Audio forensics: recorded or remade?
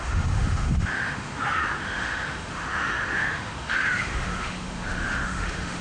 remade